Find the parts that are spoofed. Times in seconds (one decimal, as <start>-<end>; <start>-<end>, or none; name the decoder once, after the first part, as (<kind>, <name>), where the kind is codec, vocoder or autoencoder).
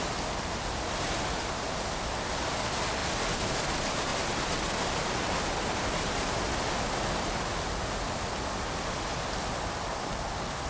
none